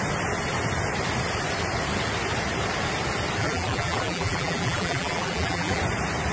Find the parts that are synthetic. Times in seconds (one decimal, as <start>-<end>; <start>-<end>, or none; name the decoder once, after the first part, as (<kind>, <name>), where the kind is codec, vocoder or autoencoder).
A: 3.4-5.8 (vocoder, BigVGAN v2)